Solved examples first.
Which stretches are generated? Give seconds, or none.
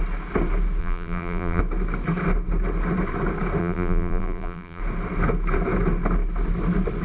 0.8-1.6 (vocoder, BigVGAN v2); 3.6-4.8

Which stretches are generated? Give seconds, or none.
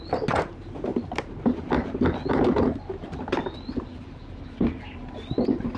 none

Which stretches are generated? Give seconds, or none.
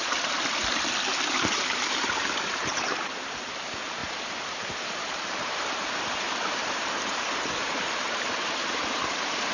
0.0-0.5 (vocoder, BigVGAN v2); 1.3-9.5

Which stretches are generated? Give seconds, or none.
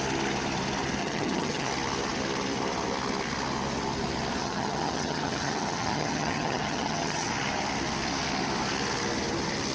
1.0-1.7 (vocoder, HiFi-GAN); 4.4-7.3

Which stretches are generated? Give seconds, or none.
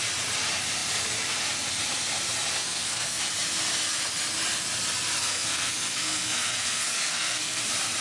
2.5-3.2 (codec, SNAC); 5.2-7.6